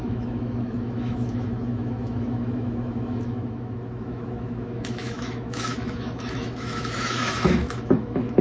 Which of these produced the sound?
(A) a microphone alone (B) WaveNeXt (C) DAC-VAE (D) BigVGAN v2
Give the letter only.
C